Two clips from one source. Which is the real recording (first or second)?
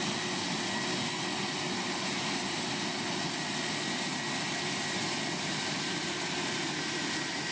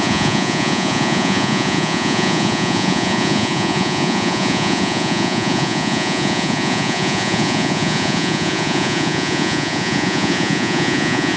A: first